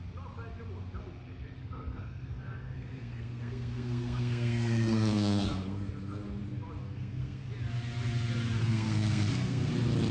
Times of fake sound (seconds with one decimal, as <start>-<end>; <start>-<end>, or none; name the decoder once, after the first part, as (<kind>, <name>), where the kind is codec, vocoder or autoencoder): 1.6-5.9 (codec, SNAC); 6.8-7.5; 8.6-9.7